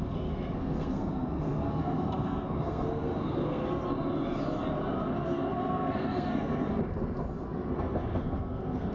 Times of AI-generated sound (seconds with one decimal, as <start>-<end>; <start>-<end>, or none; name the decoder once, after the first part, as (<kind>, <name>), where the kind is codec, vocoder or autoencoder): 0.0-3.6 (codec, SNAC); 5.1-6.5; 7.8-8.9